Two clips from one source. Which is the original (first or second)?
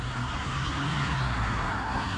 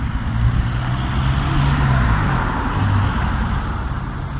second